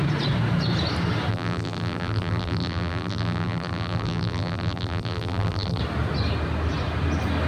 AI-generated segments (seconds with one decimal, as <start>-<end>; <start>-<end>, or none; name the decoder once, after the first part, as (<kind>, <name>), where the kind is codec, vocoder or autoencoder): 1.3-5.8 (vocoder, BigVGAN v2)